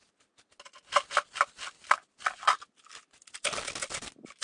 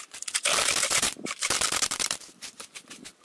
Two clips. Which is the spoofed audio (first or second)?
second